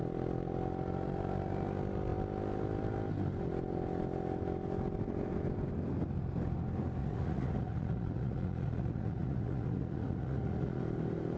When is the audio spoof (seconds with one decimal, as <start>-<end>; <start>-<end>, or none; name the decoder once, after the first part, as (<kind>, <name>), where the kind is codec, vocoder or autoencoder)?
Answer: 7.0-10.8 (vocoder, Vocos)